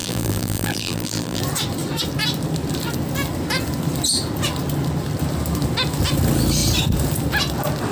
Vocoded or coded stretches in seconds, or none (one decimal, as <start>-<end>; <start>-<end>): 0.0-1.4